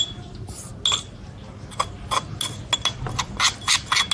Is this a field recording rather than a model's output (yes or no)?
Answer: yes